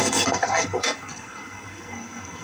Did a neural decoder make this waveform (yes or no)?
yes